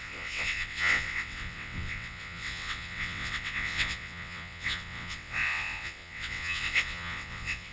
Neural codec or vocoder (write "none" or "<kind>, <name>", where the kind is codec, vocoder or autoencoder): vocoder, WaveNeXt